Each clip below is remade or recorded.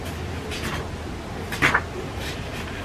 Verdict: recorded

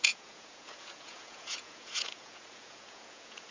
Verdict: remade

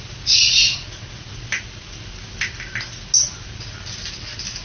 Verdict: recorded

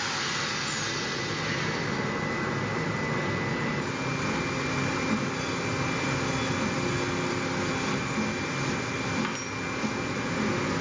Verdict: recorded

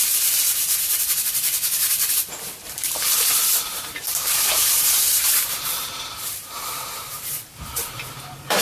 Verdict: remade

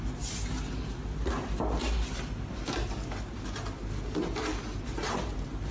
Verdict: recorded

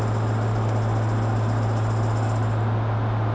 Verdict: recorded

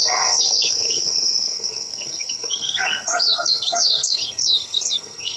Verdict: remade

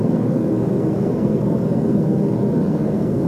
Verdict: remade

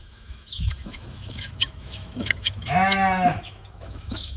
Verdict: remade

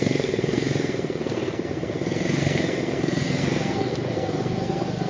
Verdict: remade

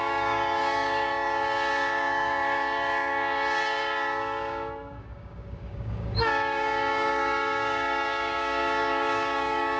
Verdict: remade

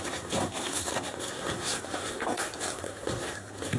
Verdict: remade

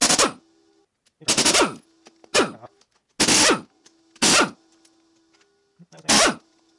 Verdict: recorded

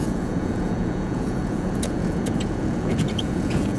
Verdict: remade